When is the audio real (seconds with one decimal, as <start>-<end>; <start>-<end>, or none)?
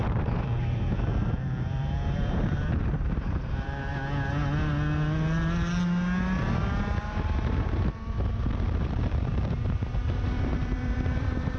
3.9-7.0